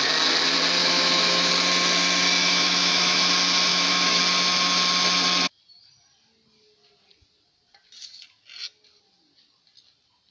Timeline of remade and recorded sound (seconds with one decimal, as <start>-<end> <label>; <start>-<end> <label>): 0.0-0.8 recorded; 0.8-1.5 remade; 1.5-2.4 recorded; 2.4-3.3 remade; 3.3-3.7 recorded; 3.7-4.2 remade; 4.2-10.3 recorded